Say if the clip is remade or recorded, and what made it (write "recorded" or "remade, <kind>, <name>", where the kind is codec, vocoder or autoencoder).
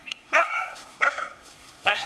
remade, codec, SNAC